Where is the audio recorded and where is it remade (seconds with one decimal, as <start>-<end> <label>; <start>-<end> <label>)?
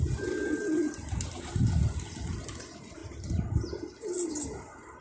0.0-5.0 recorded